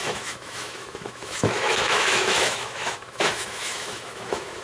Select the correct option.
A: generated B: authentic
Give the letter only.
A